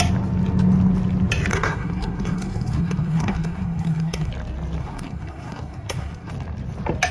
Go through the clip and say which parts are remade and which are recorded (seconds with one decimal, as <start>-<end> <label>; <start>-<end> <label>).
0.0-1.5 recorded; 1.5-4.3 remade; 4.3-4.8 recorded; 4.8-6.3 remade; 6.3-7.1 recorded